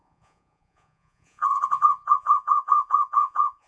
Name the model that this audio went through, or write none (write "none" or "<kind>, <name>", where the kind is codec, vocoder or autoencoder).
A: vocoder, Vocos